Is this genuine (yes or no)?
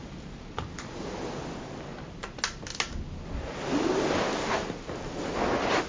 yes